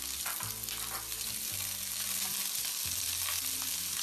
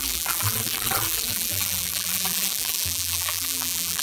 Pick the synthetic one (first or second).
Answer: second